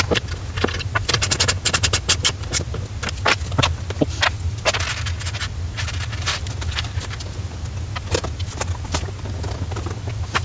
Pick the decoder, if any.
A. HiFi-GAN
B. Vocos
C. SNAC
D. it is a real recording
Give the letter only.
D